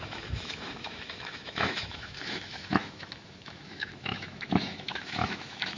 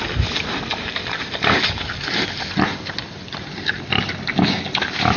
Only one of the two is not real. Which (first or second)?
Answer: first